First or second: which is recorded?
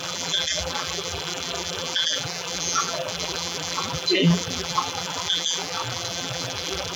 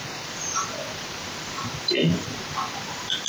second